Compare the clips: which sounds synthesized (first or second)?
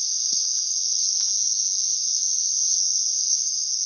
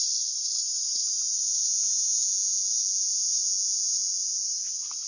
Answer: first